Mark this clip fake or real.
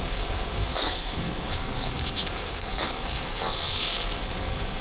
fake